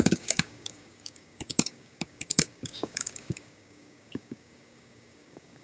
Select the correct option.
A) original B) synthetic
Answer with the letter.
B